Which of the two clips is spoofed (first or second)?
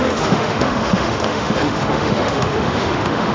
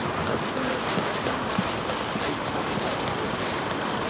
first